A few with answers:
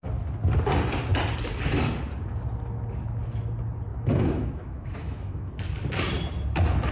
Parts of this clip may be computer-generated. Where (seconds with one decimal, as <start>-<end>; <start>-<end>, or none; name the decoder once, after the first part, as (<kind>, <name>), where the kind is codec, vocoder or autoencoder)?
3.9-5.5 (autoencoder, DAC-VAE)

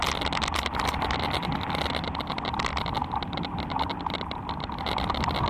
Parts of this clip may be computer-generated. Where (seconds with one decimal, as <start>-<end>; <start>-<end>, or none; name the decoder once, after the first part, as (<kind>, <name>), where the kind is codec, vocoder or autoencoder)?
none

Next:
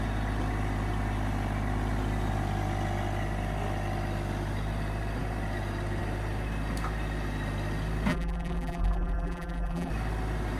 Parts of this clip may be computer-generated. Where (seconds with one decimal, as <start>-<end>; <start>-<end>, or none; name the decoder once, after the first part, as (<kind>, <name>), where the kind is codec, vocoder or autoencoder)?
8.1-9.9 (vocoder, BigVGAN v2)

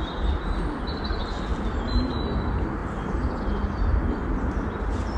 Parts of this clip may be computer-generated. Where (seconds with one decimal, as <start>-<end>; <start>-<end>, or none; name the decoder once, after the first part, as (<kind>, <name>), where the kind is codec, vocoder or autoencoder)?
none